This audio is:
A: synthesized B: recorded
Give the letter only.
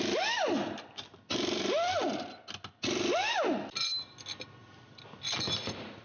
B